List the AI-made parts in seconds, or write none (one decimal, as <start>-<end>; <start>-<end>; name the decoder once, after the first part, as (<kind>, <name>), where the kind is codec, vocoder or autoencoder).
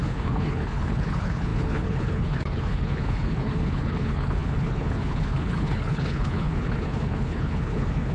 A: 0.0-8.1 (codec, HILCodec)